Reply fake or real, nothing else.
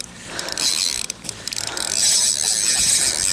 fake